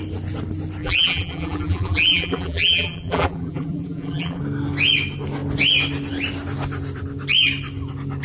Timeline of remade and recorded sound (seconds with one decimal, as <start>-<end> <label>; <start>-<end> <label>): 0.0-0.8 recorded; 0.8-4.4 remade; 4.4-8.2 recorded